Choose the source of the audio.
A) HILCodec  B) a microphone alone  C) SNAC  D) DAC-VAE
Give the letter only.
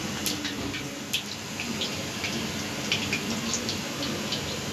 B